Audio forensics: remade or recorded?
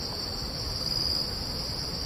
recorded